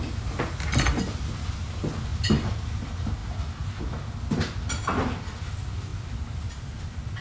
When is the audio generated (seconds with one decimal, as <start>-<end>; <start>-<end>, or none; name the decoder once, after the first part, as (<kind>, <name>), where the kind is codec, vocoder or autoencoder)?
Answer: none